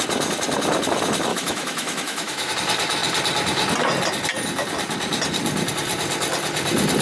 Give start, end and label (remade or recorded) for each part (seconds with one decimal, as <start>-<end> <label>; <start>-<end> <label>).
0.0-1.3 recorded; 1.3-2.5 remade; 2.5-7.0 recorded